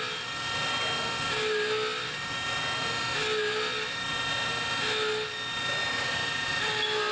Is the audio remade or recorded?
recorded